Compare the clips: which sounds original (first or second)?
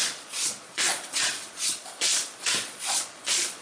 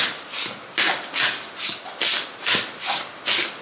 second